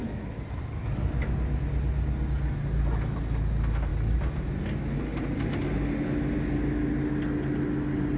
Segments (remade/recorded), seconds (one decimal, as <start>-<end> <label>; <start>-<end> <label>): 0.0-8.2 recorded